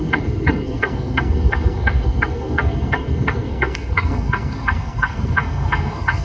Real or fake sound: fake